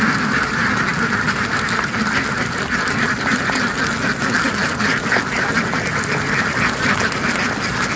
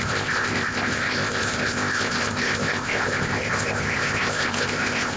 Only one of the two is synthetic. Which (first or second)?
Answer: second